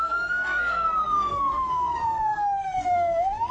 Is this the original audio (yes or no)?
no